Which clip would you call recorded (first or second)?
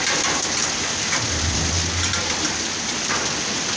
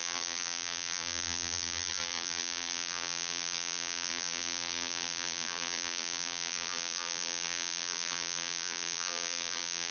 first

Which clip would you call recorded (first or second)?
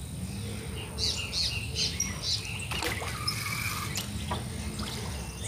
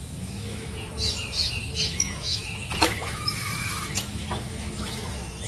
first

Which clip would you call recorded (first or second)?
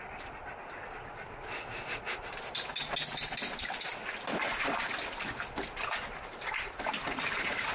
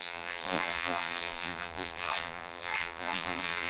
first